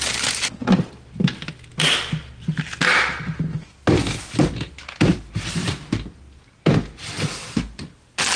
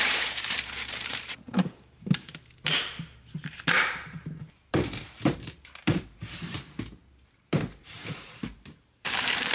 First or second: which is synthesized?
second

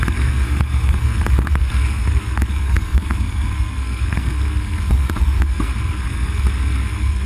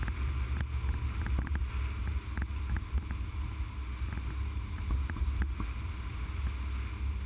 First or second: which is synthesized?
first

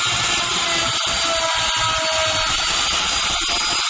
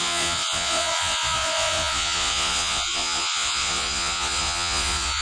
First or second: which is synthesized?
second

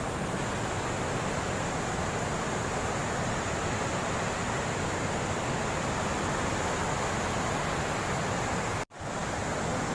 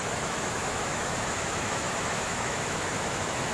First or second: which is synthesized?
second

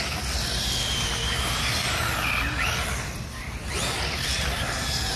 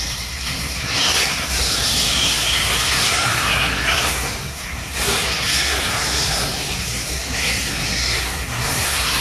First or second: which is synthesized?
second